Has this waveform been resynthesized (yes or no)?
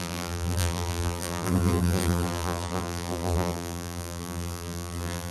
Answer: yes